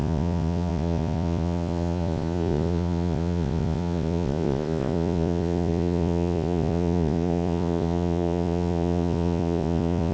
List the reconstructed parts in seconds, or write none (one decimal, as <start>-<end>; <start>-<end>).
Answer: 0.0-10.1